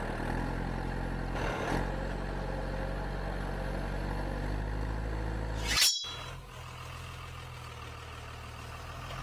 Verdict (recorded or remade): recorded